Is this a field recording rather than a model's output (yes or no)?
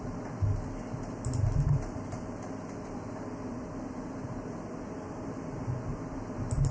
yes